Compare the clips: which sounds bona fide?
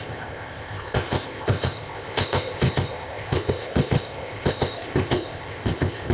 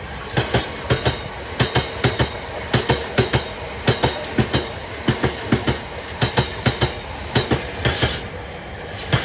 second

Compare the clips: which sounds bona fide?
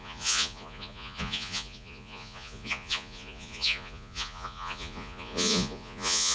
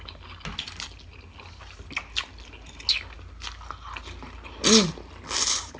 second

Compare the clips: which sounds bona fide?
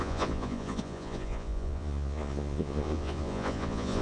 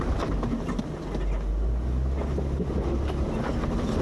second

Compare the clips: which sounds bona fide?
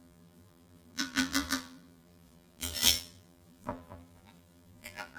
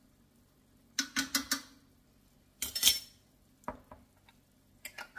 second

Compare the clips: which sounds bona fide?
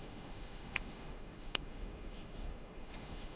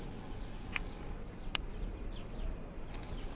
second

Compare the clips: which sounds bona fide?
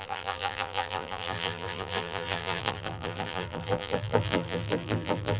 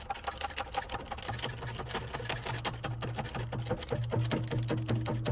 second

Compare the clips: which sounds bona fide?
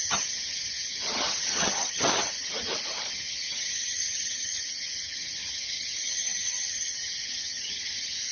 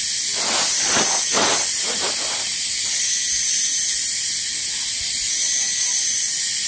second